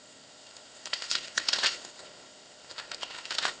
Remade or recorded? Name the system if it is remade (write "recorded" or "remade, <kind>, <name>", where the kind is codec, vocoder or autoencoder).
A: remade, codec, ZipCodec